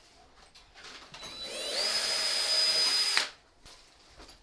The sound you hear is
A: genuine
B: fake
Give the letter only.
A